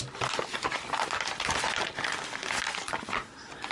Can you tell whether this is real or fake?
real